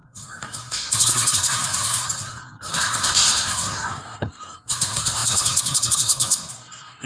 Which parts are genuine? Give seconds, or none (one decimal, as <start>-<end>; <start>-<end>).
none